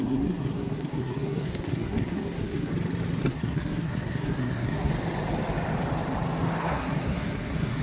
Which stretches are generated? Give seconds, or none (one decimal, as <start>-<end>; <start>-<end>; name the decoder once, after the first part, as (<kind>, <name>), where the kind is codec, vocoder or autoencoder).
0.0-2.7 (codec, SNAC); 3.2-4.9; 6.6-7.8